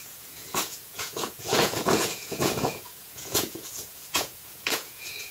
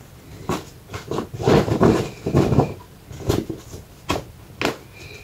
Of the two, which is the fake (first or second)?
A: first